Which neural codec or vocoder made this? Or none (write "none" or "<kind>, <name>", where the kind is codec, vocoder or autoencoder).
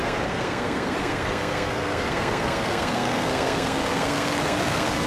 codec, SNAC